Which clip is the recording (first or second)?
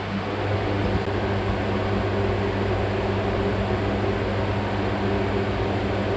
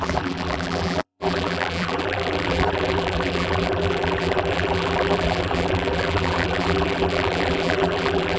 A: first